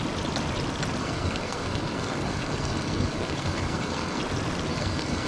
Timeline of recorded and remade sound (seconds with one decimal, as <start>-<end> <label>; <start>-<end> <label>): 0.0-1.0 recorded; 1.0-4.2 remade; 4.2-4.7 recorded; 4.7-5.3 remade

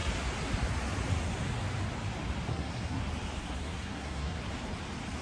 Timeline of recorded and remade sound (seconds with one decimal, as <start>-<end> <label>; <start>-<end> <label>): 0.0-2.5 recorded; 2.5-3.0 remade; 3.0-3.4 recorded; 3.4-4.4 remade; 4.4-5.2 recorded

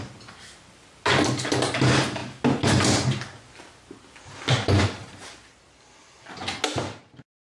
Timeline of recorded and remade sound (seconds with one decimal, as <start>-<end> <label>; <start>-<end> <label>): 0.0-7.4 recorded

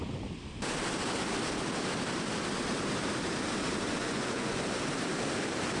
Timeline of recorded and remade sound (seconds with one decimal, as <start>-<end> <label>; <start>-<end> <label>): 0.0-4.0 recorded; 4.0-4.6 remade; 4.6-5.8 recorded

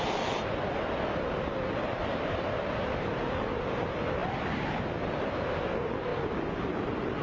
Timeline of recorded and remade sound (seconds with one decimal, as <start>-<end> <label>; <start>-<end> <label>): 0.0-7.2 recorded

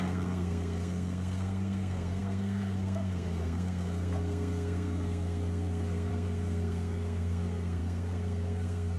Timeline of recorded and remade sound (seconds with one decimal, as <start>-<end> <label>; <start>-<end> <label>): 0.0-9.0 remade

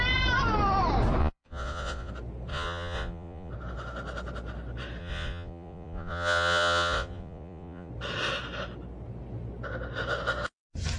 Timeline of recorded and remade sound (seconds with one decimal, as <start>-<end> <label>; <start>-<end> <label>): 0.0-1.2 recorded; 1.2-2.1 remade; 2.1-2.5 recorded; 2.5-3.5 remade; 3.5-5.0 recorded; 5.0-7.9 remade; 7.9-11.0 recorded

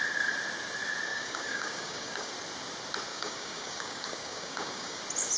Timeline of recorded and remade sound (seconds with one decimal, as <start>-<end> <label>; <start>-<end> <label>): 0.0-1.1 recorded; 1.1-2.3 remade; 2.3-3.1 recorded; 3.1-5.0 remade; 5.0-5.4 recorded